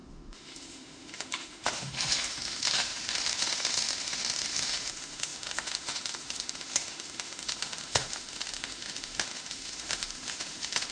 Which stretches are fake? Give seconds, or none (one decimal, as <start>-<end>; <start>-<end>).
0.0-10.9